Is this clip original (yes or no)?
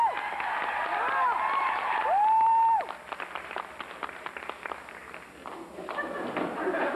yes